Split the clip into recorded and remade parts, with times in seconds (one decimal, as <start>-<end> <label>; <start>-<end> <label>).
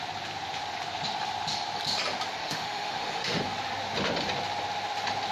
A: 0.0-2.4 recorded; 2.4-3.4 remade; 3.4-5.3 recorded